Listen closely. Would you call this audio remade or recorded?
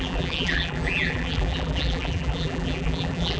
remade